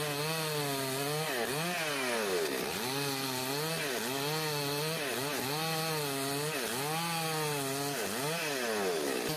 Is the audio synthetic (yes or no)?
no